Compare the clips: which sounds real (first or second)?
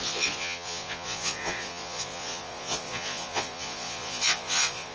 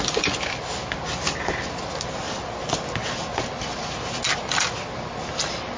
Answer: second